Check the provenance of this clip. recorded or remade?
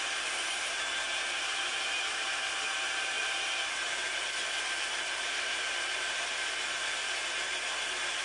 remade